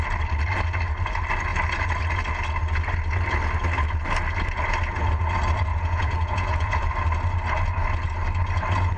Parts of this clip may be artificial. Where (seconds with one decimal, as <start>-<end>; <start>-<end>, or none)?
5.7-6.9